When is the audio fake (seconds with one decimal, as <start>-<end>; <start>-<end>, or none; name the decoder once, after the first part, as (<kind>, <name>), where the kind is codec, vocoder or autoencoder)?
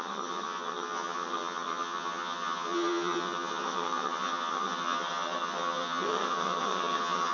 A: 0.0-7.3 (vocoder, HiFi-GAN)